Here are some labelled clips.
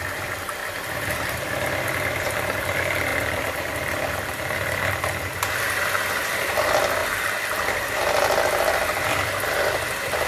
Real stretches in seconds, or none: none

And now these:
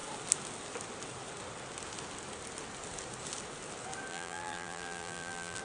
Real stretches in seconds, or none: 0.0-4.1

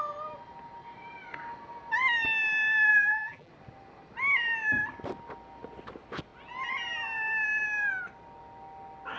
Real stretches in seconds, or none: 0.0-2.9; 3.5-9.2

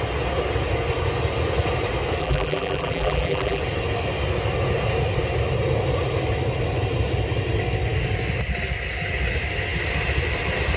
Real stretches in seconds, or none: 0.0-2.2; 3.6-10.8

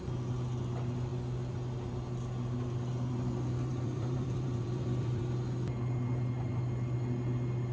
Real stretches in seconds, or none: 0.0-3.7; 5.2-7.7

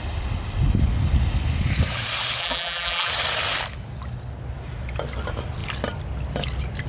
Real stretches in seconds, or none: 0.0-2.4; 3.1-6.9